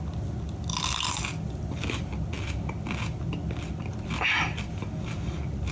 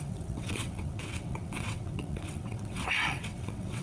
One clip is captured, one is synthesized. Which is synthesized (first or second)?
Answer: second